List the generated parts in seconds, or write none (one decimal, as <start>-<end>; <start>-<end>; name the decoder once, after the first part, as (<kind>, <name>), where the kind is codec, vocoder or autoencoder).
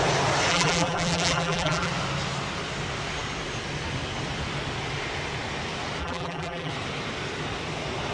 0.5-1.9 (vocoder, BigVGAN v2); 6.0-6.7